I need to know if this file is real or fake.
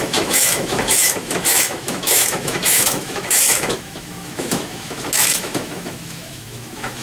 fake